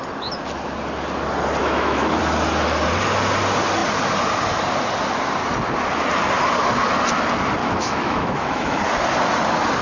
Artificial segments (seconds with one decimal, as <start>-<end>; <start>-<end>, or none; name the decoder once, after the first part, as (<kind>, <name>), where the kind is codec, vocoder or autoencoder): 1.6-2.2 (autoencoder, DAC-VAE); 7.6-8.8